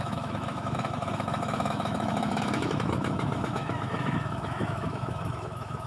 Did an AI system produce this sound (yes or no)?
yes